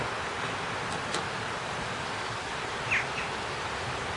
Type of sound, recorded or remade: recorded